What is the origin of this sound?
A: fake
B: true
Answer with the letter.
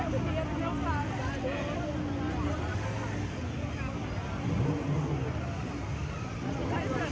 B